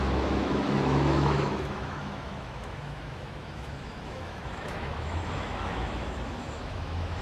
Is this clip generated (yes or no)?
yes